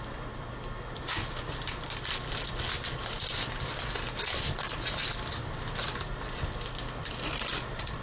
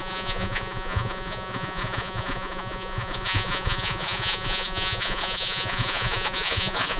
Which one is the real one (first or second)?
first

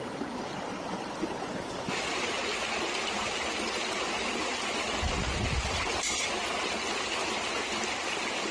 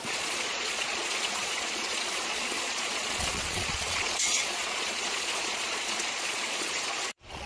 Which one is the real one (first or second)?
first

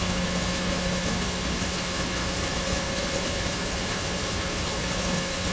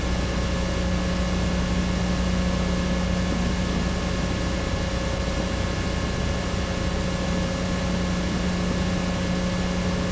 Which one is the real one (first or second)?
second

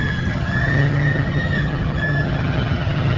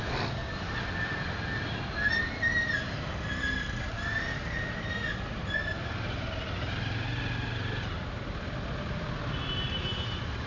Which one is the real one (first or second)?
second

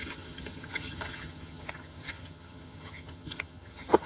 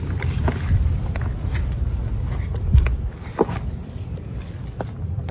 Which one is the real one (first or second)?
second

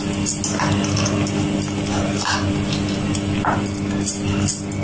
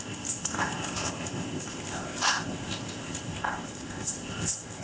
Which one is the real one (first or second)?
first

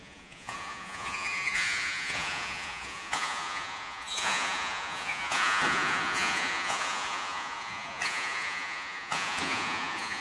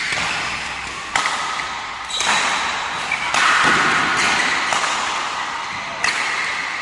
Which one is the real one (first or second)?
second